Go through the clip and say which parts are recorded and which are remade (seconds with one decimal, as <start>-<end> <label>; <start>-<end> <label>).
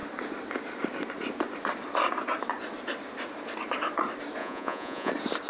0.0-4.4 recorded; 4.4-5.1 remade; 5.1-5.5 recorded